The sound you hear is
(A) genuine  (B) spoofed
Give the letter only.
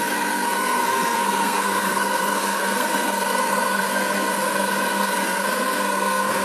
B